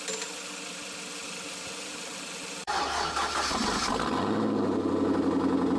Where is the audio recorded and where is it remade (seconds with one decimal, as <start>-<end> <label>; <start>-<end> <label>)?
0.0-1.2 recorded; 1.2-3.9 remade; 3.9-5.8 recorded

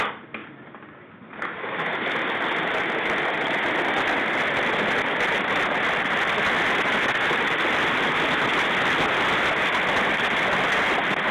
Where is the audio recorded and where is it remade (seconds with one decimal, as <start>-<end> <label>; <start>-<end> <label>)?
0.0-11.3 recorded

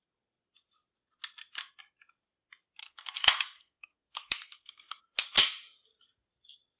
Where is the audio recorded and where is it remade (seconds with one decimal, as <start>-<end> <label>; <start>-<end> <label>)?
0.0-2.8 recorded; 2.8-5.0 remade; 5.0-6.8 recorded

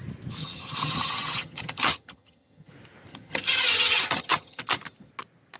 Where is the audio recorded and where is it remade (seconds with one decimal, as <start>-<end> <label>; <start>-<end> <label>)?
0.0-0.4 recorded; 0.4-2.7 remade; 2.7-3.1 recorded; 3.1-4.6 remade; 4.6-5.6 recorded

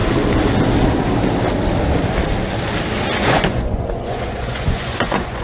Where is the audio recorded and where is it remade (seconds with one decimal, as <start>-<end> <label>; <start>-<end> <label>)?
0.0-3.2 recorded; 3.2-5.4 remade

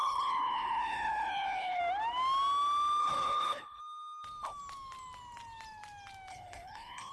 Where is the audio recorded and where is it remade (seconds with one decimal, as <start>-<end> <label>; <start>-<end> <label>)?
0.0-1.8 remade; 1.8-3.0 recorded; 3.0-3.8 remade; 3.8-6.3 recorded; 6.3-7.1 remade

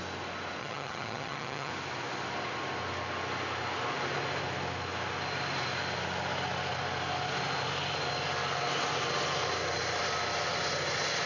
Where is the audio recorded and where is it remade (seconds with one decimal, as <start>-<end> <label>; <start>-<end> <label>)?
0.0-0.6 recorded; 0.6-1.7 remade; 1.7-11.3 recorded